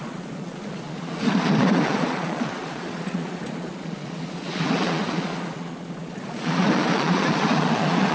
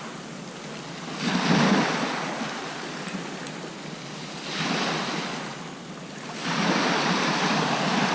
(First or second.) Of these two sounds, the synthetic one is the first